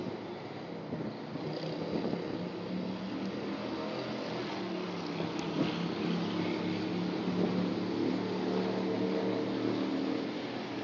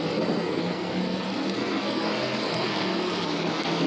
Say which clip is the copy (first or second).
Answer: second